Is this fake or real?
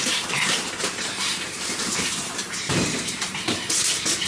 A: fake